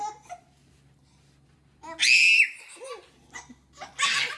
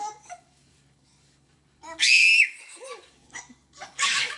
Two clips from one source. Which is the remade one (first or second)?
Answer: second